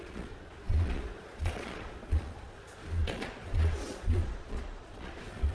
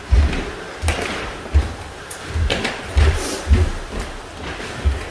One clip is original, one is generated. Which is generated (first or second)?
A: first